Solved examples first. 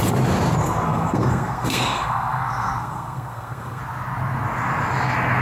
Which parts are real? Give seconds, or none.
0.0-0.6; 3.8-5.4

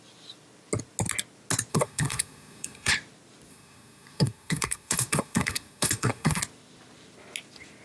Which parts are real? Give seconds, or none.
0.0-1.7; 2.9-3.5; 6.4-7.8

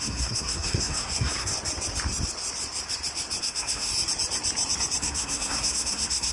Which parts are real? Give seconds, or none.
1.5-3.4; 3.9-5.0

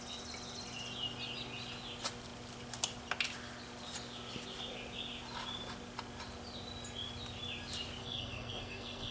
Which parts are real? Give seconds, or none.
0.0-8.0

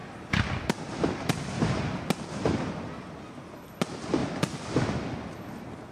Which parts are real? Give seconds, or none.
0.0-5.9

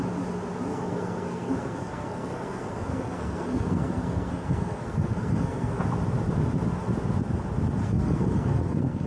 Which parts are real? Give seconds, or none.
0.0-0.7; 5.8-7.8

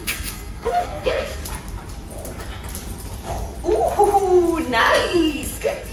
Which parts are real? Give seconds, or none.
1.4-4.8